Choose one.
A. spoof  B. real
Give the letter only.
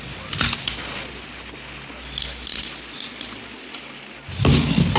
B